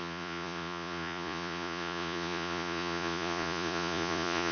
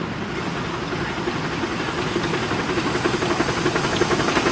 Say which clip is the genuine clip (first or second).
second